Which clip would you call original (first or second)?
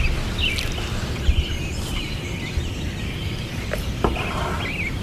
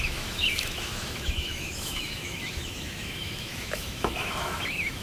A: first